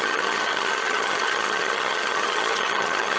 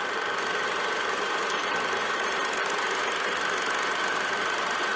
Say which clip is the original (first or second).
second